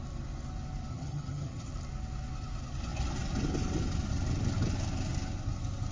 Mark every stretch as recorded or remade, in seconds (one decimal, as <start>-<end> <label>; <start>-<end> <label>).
0.0-0.9 recorded; 0.9-1.7 remade; 1.7-5.9 recorded